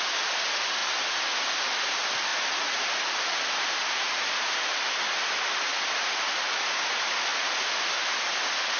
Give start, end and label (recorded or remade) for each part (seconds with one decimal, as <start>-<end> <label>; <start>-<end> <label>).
0.0-7.3 recorded; 7.3-8.1 remade; 8.1-8.8 recorded